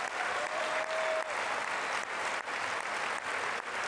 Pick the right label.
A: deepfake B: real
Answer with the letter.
B